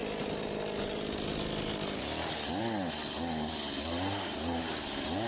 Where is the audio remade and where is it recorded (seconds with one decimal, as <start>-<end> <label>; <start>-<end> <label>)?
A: 0.0-5.3 recorded